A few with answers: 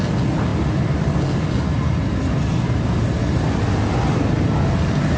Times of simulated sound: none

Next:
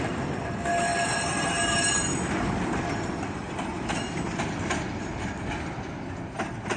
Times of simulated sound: none